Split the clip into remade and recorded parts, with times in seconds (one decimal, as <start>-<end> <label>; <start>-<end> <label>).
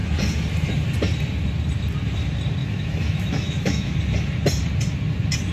0.0-2.6 recorded; 2.6-3.9 remade; 3.9-5.5 recorded